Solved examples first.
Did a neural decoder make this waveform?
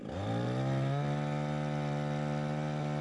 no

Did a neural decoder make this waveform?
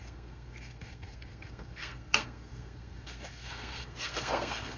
yes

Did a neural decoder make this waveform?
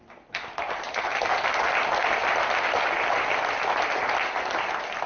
no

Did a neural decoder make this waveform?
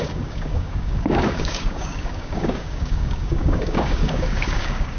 yes